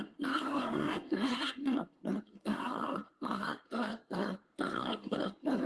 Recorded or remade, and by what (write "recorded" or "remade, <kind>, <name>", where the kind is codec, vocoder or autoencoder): remade, codec, SNAC